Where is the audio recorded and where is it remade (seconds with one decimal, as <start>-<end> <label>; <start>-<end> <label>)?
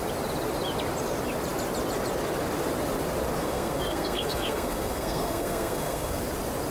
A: 0.0-3.4 recorded; 3.4-6.2 remade; 6.2-6.7 recorded